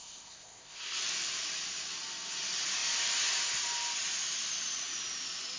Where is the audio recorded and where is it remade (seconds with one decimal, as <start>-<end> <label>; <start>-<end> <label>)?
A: 0.0-1.0 remade; 1.0-5.6 recorded